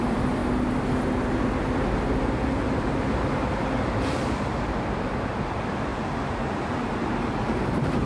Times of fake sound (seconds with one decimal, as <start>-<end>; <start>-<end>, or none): 0.0-0.4; 1.7-8.1